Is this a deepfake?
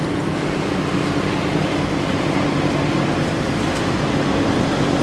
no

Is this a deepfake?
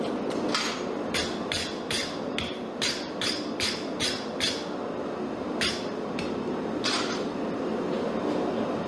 no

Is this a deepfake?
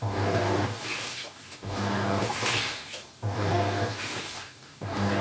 yes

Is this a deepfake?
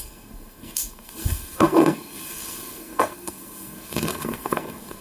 yes